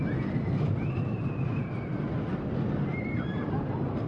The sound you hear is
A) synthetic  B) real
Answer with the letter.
B